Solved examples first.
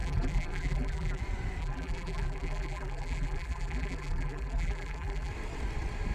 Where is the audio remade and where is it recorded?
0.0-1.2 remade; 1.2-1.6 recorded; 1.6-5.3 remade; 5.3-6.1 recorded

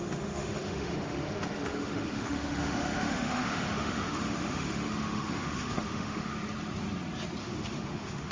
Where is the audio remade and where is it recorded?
0.0-6.3 remade; 6.3-7.4 recorded; 7.4-8.3 remade

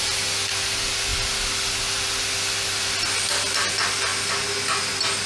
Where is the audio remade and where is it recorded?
0.0-5.3 recorded

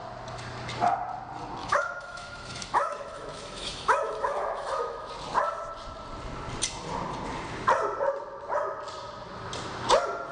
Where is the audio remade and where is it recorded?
0.0-1.6 recorded; 1.6-5.1 remade; 5.1-10.3 recorded

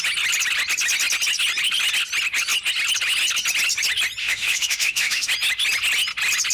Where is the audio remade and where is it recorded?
0.0-4.2 recorded; 4.2-5.3 remade; 5.3-6.5 recorded

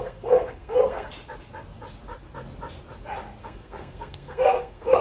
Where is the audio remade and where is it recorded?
0.0-1.1 remade; 1.1-3.4 recorded; 3.4-5.0 remade